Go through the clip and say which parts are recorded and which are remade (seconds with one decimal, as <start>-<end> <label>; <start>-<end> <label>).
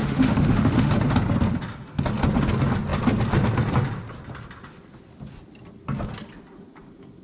0.0-0.9 remade; 0.9-7.2 recorded